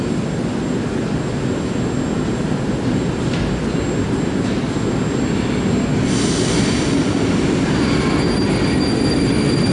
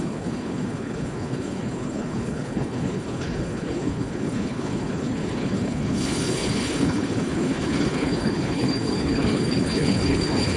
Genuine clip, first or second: first